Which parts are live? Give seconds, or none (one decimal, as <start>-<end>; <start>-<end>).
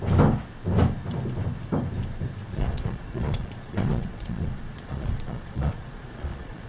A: 0.0-2.4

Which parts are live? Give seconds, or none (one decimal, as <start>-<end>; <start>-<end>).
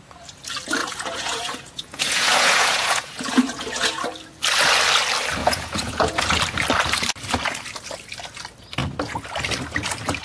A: 0.0-0.8; 4.0-5.4; 6.4-10.2